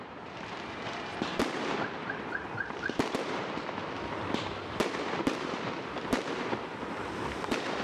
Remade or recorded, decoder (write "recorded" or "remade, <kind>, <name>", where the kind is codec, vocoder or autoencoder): remade, vocoder, BigVGAN v2